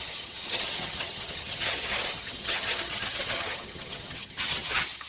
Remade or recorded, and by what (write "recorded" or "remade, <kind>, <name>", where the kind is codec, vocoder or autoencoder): remade, vocoder, HiFi-GAN